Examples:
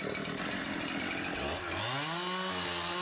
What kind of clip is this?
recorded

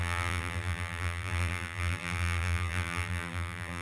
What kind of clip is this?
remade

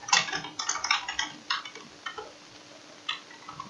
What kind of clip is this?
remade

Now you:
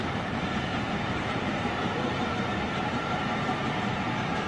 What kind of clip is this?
remade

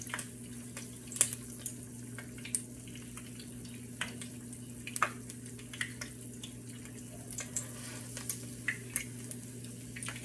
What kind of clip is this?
recorded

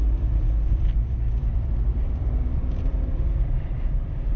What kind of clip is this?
remade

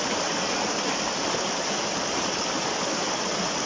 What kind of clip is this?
recorded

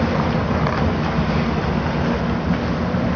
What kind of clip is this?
recorded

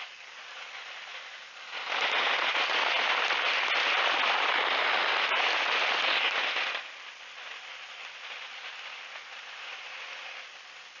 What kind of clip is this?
recorded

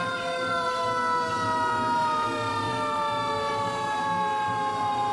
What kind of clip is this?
remade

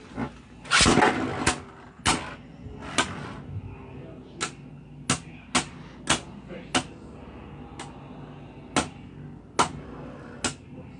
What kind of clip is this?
recorded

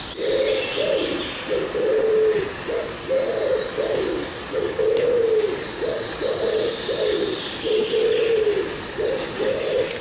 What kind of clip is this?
recorded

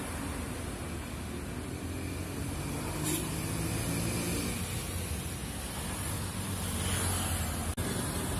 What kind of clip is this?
recorded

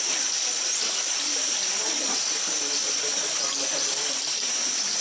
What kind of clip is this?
recorded